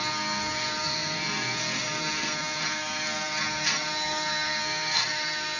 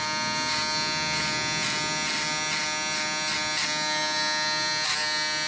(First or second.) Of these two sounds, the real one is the second